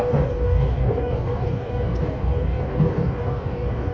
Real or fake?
fake